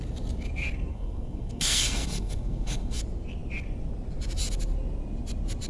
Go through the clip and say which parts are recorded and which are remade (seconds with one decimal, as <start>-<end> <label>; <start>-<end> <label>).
0.0-0.9 recorded; 0.9-3.0 remade; 3.0-5.7 recorded